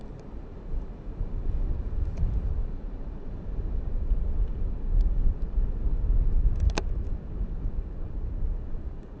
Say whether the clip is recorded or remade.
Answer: remade